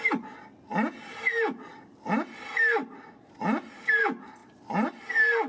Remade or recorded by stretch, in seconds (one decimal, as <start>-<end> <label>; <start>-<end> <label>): 0.0-4.4 recorded; 4.4-5.0 remade; 5.0-5.5 recorded